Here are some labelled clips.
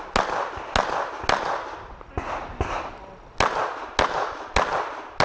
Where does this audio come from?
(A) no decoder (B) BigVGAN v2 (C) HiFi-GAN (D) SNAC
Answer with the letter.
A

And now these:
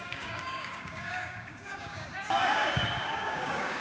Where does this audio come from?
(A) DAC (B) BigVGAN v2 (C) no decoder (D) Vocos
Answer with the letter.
A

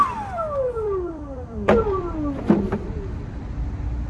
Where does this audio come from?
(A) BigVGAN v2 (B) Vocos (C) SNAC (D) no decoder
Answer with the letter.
A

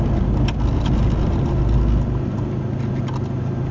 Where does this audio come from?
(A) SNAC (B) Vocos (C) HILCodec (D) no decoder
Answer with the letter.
D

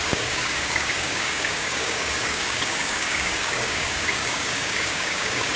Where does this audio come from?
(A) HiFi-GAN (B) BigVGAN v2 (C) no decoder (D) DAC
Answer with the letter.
D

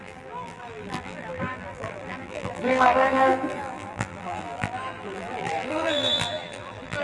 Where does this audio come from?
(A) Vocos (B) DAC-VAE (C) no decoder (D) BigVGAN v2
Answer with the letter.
D